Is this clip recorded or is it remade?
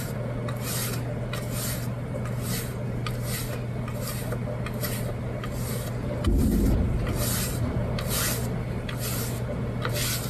recorded